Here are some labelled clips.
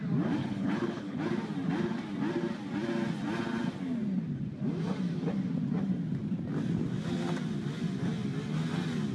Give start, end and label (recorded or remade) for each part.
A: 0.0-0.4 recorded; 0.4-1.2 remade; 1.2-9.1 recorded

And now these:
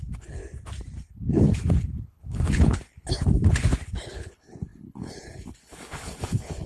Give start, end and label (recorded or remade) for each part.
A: 0.0-0.4 remade; 0.4-1.0 recorded; 1.0-6.7 remade

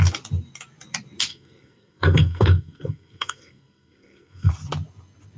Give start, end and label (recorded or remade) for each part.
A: 0.0-1.3 recorded; 1.3-4.5 remade; 4.5-5.4 recorded

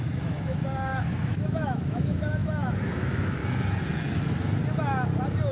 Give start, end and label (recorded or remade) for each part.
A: 0.0-3.4 remade; 3.4-5.5 recorded

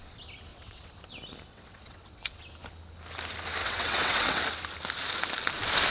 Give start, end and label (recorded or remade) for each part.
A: 0.0-0.5 recorded; 0.5-1.0 remade; 1.0-1.5 recorded; 1.5-2.4 remade; 2.4-3.6 recorded; 3.6-4.4 remade; 4.4-5.9 recorded